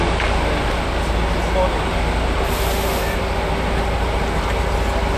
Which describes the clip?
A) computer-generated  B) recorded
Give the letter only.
B